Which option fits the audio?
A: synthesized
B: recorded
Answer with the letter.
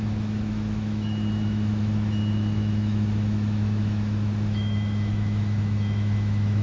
A